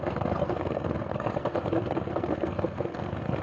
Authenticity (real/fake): fake